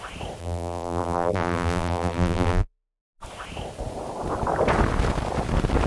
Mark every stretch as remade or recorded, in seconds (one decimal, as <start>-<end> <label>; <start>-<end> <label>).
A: 0.0-0.4 recorded; 0.4-3.0 remade; 3.0-5.9 recorded